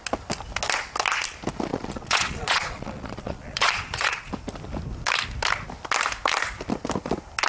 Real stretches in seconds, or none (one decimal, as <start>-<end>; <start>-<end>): 0.0-1.7; 4.3-7.5

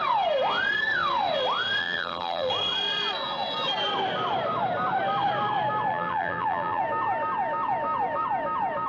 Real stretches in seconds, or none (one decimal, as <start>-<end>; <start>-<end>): 0.0-1.8; 2.5-5.9; 6.8-8.9

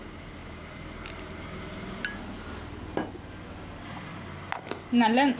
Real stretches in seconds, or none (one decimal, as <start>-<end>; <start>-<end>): 0.0-5.4

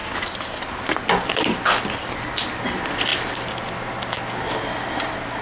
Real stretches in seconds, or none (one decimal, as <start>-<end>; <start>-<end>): 0.0-5.4

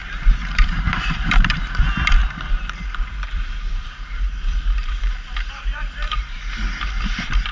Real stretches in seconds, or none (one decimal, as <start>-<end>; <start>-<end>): 0.0-0.4; 1.6-2.2; 6.4-7.5

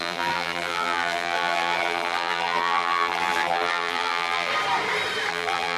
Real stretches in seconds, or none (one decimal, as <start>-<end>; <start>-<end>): 4.5-5.3